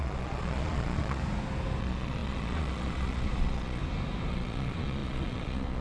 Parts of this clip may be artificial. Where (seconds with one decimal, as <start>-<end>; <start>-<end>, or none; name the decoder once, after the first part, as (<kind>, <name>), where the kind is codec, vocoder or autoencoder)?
0.0-1.2 (vocoder, Vocos); 1.8-3.8; 4.3-5.8